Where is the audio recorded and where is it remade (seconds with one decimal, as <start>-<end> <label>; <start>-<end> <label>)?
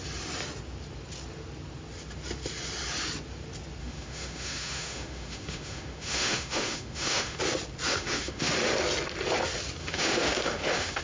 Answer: 0.0-3.8 recorded; 3.8-7.4 remade; 7.4-7.9 recorded; 7.9-8.5 remade; 8.5-9.8 recorded; 9.8-11.0 remade